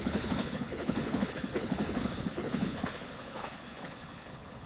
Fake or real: fake